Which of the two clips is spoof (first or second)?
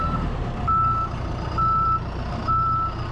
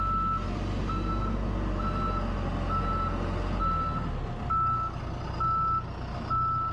first